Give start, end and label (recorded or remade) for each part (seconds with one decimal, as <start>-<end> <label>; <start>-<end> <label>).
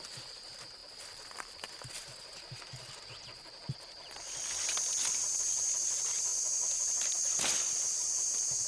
0.0-6.3 remade; 6.3-8.7 recorded